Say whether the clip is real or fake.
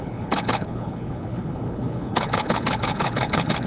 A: fake